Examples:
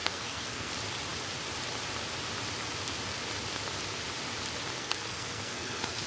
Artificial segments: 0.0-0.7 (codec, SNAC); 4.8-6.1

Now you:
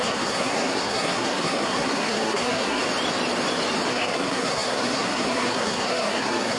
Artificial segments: 0.0-2.8 (codec, SNAC); 3.9-6.6

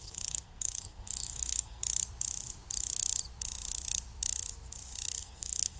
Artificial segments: 0.0-1.8 (codec, SNAC); 5.2-5.8

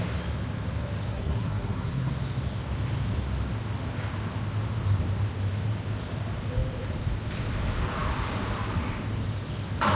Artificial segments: 1.1-2.1 (codec, SNAC)

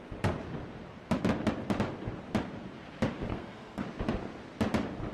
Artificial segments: 3.3-3.8 (codec, SNAC)

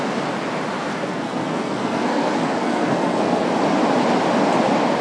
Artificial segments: 0.8-3.5 (codec, SNAC)